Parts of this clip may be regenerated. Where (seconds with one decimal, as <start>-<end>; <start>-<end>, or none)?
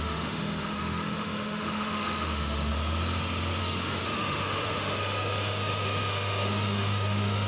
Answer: 0.0-2.7; 3.6-7.5